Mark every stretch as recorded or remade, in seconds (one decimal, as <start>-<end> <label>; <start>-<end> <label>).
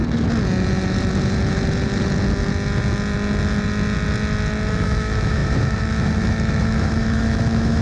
0.0-4.7 recorded; 4.7-7.8 remade